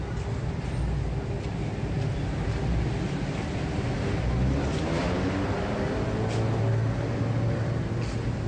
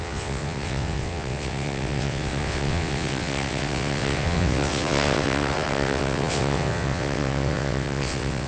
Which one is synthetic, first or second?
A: second